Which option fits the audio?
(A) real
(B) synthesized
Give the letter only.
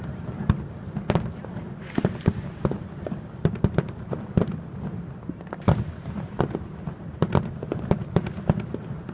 B